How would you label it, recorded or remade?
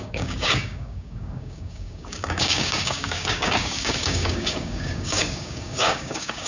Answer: remade